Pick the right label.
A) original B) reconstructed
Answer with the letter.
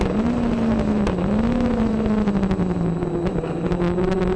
A